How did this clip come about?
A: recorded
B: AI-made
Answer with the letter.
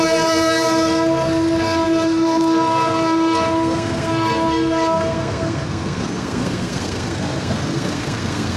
B